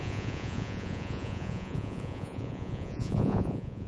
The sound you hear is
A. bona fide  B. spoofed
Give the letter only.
B